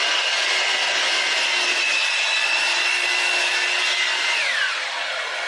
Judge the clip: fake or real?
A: real